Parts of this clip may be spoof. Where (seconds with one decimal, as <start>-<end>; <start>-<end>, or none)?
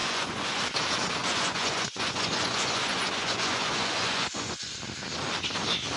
0.0-0.6; 1.2-4.8